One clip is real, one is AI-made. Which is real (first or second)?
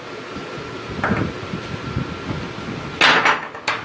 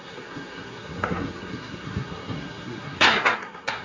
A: first